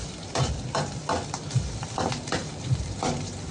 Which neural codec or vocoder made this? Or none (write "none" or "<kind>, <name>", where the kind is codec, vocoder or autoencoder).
vocoder, BigVGAN v2